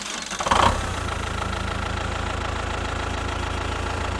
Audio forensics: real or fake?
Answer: real